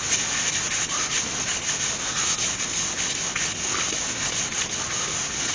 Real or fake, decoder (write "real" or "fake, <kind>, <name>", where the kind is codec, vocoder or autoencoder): real